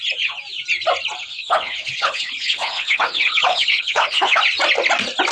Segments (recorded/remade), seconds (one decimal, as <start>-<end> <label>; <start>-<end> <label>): 0.0-1.2 recorded; 1.2-4.4 remade; 4.4-5.3 recorded